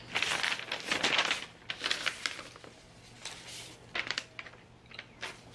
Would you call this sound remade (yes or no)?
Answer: no